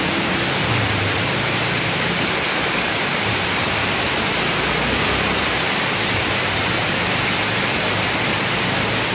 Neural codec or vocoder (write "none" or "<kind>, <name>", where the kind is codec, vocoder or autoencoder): vocoder, BigVGAN v2